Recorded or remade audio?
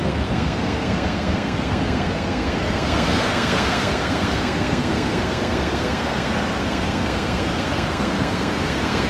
remade